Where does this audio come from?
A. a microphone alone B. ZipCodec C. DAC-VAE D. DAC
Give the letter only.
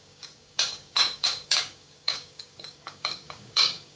D